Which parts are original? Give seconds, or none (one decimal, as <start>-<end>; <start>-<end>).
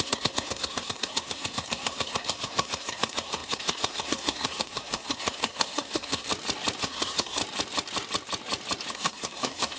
6.3-6.8; 7.4-8.9